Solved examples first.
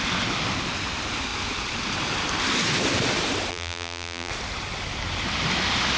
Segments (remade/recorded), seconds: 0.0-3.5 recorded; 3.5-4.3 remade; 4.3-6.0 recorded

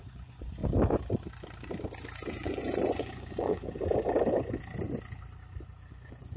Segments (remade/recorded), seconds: 0.0-0.6 remade; 0.6-2.3 recorded; 2.3-3.6 remade; 3.6-5.9 recorded; 5.9-6.4 remade

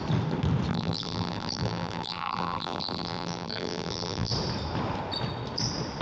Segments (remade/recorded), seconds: 0.0-0.7 recorded; 0.7-4.3 remade; 4.3-6.0 recorded

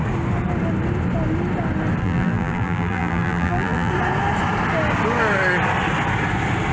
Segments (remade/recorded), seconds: 0.0-2.0 recorded; 2.0-3.9 remade; 3.9-6.7 recorded

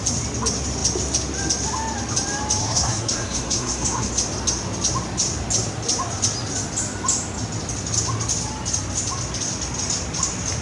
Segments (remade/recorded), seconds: 0.0-2.6 recorded; 2.6-4.1 remade; 4.1-10.6 recorded